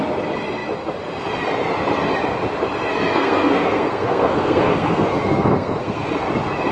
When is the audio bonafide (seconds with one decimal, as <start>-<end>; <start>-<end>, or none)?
0.0-2.9; 6.1-6.7